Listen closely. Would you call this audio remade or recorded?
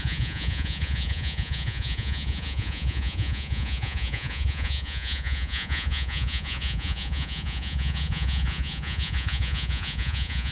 remade